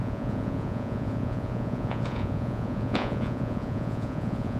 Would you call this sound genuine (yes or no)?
no